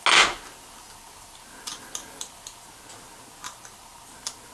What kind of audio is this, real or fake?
real